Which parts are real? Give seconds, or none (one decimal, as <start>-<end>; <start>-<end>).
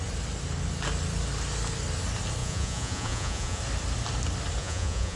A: 0.0-2.4; 3.6-4.6